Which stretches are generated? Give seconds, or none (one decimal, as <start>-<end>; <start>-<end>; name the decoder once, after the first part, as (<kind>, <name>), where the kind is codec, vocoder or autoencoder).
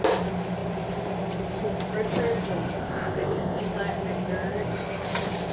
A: 2.8-3.6 (codec, ZipCodec)